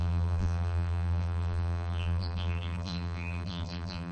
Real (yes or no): no